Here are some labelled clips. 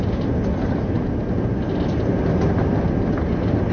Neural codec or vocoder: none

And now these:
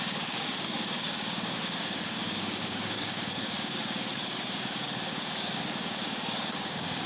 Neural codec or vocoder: codec, DAC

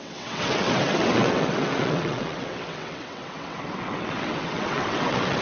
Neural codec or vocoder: vocoder, WaveNeXt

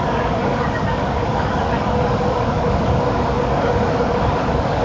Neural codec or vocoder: codec, DAC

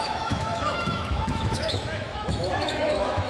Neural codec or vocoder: autoencoder, DAC-VAE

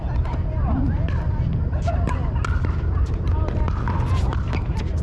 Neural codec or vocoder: none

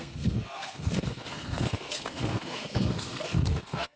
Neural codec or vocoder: codec, SNAC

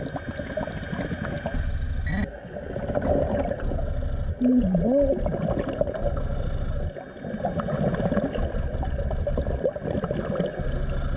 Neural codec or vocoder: none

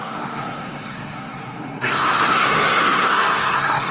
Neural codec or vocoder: codec, SNAC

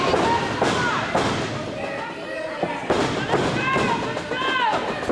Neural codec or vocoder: none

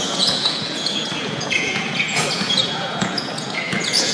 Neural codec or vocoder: vocoder, Vocos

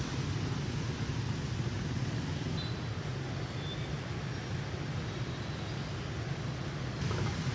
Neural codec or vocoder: none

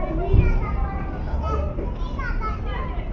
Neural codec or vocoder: none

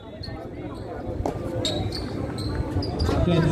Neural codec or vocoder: none